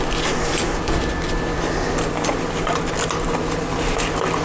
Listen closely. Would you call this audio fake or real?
real